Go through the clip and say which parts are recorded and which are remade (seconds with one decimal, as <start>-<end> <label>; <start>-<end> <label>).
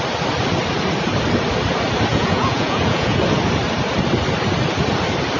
0.0-2.1 recorded; 2.1-3.2 remade; 3.2-5.4 recorded